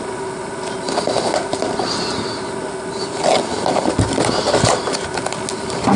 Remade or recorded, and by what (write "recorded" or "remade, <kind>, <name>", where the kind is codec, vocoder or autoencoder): recorded